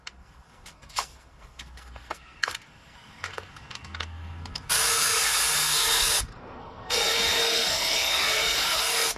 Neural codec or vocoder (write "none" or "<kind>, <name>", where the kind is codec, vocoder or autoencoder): codec, SNAC